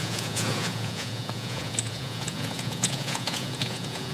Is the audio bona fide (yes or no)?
no